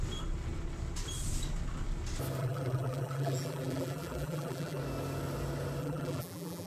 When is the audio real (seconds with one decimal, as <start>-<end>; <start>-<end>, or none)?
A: 0.0-2.4; 4.8-5.8